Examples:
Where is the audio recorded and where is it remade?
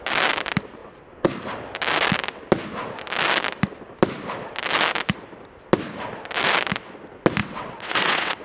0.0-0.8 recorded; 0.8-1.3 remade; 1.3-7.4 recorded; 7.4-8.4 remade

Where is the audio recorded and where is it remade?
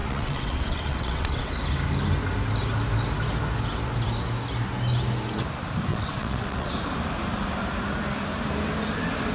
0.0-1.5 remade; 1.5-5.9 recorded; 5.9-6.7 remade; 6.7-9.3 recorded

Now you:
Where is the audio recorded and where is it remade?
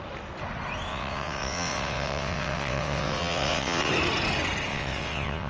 0.0-0.9 recorded; 0.9-3.9 remade; 3.9-4.7 recorded; 4.7-5.5 remade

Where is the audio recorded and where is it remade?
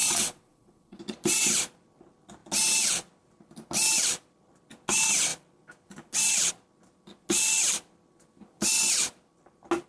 0.0-1.0 remade; 1.0-9.9 recorded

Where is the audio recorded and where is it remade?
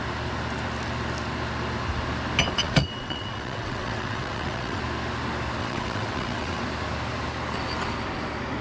0.0-2.6 recorded; 2.6-4.8 remade; 4.8-5.6 recorded; 5.6-6.6 remade; 6.6-8.6 recorded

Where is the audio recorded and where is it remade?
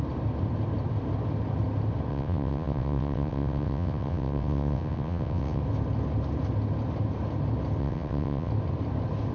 0.0-2.1 recorded; 2.1-5.6 remade; 5.6-7.8 recorded; 7.8-8.5 remade; 8.5-9.3 recorded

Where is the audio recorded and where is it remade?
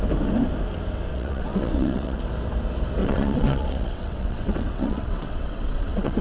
0.0-1.1 recorded; 1.1-2.2 remade; 2.2-3.0 recorded; 3.0-6.2 remade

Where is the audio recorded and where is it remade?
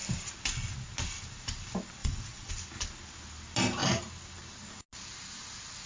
0.0-2.0 recorded; 2.0-2.5 remade; 2.5-5.9 recorded